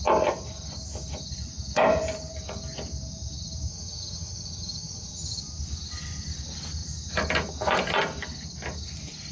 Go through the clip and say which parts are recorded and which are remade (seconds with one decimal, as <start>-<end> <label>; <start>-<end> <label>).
0.0-3.7 recorded; 3.7-5.4 remade; 5.4-9.3 recorded